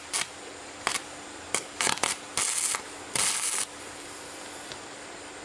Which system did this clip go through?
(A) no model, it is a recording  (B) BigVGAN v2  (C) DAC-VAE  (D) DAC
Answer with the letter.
A